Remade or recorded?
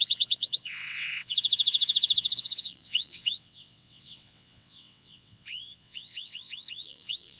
remade